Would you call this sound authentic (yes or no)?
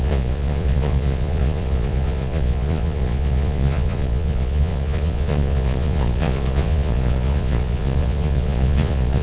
no